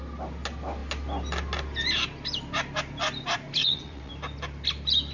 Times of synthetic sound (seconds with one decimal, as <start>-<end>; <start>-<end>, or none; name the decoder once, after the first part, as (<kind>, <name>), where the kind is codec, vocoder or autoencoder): 3.6-4.1 (vocoder, WaveNeXt)